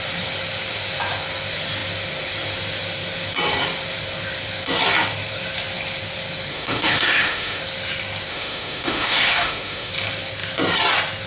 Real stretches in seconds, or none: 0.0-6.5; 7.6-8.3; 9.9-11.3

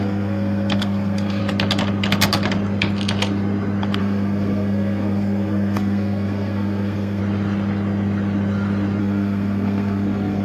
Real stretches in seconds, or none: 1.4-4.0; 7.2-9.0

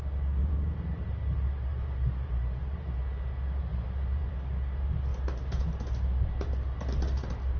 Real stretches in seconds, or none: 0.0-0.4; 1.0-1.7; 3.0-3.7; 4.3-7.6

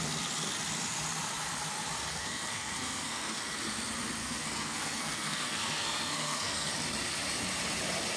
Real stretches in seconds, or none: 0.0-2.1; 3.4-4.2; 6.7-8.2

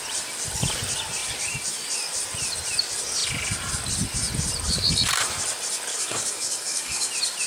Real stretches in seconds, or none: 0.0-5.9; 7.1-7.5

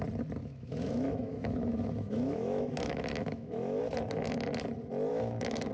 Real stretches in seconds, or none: 0.0-0.4; 3.8-5.1

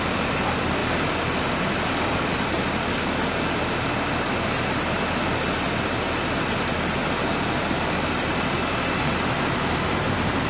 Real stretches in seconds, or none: 0.0-0.8; 2.5-10.5

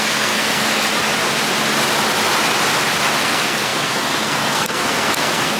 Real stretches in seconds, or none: 0.9-3.2